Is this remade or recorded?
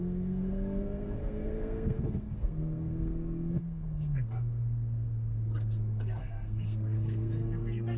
remade